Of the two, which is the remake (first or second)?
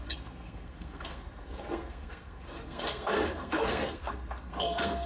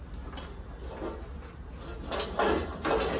first